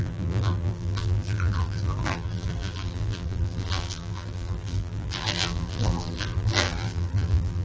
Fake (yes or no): yes